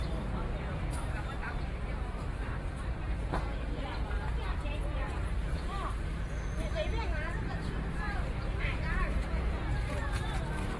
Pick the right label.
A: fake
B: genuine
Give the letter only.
A